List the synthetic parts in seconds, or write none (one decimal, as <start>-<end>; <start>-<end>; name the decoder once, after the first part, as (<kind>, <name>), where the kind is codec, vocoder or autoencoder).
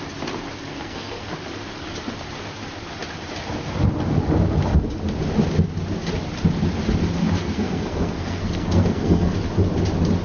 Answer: 0.7-1.3 (codec, SNAC); 7.4-9.3